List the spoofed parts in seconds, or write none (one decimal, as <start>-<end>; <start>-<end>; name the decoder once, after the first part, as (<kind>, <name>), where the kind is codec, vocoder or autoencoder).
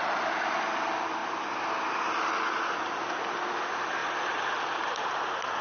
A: none